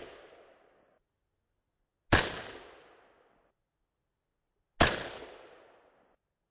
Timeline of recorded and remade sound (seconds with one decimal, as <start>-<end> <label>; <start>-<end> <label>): 0.0-6.5 recorded